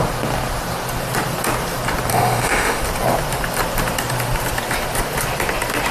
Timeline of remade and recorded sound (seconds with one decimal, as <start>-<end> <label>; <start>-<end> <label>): 0.0-2.1 recorded; 2.1-2.8 remade; 2.8-5.9 recorded